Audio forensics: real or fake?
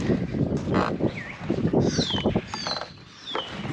real